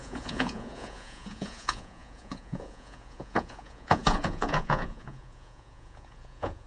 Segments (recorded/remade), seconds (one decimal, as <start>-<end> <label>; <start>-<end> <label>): 0.0-6.7 remade